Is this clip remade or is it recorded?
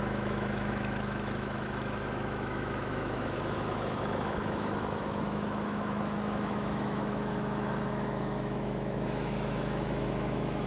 remade